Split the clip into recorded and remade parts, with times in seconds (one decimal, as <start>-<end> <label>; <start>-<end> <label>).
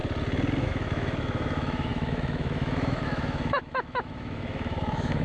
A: 0.0-0.6 recorded; 0.6-5.2 remade